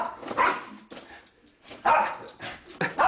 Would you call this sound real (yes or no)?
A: yes